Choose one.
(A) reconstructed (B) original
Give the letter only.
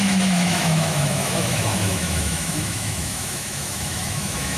A